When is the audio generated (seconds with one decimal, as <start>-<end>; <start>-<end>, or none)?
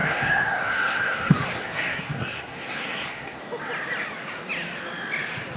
0.0-3.4